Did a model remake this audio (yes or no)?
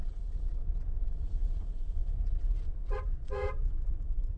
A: yes